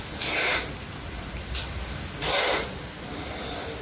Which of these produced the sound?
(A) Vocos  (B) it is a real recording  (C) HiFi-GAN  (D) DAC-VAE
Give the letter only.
B